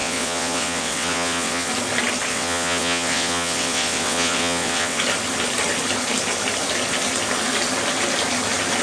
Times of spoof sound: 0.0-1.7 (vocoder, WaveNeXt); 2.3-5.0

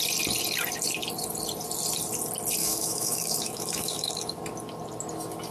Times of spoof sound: 2.6-4.4 (autoencoder, DAC-VAE)

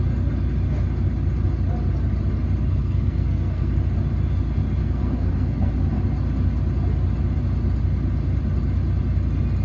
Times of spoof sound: 2.7-3.7 (codec, SNAC); 4.8-5.7

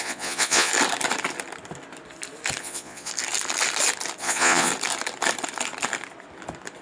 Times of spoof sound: 0.0-0.7 (vocoder, Vocos); 2.6-3.1; 4.2-4.7

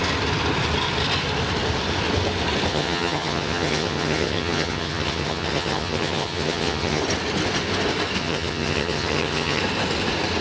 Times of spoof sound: 2.7-7.0 (vocoder, HiFi-GAN); 8.2-9.6